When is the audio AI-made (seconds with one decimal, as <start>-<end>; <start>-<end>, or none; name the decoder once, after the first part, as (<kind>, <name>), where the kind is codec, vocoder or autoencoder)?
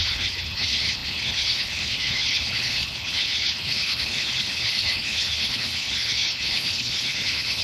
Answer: 0.0-7.6 (codec, HILCodec)